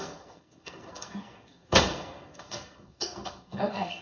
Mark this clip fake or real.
fake